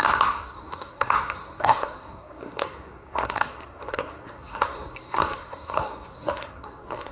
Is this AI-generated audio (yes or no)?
yes